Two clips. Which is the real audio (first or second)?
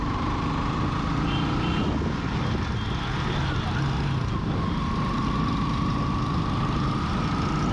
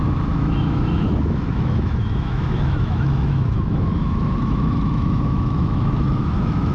first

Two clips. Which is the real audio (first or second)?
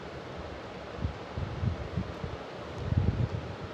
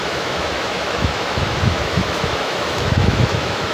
first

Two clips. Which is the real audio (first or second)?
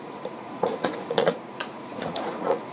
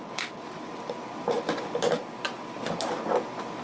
second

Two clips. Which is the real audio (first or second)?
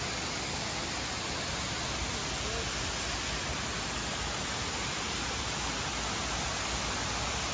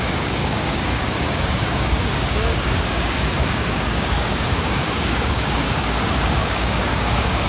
first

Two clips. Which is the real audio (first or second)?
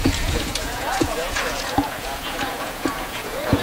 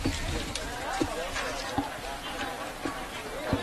second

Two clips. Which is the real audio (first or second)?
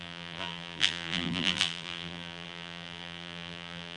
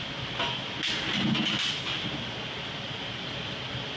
second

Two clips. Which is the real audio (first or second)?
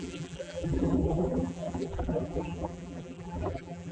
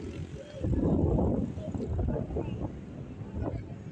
second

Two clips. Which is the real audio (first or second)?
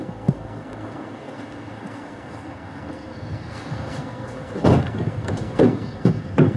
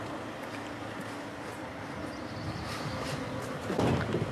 second